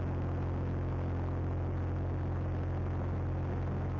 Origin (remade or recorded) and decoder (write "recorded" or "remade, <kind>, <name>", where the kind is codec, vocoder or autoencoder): recorded